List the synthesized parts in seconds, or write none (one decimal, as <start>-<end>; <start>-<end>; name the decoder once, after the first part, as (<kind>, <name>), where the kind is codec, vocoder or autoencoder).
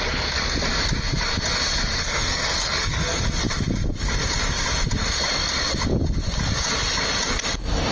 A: 1.9-3.2 (codec, SNAC)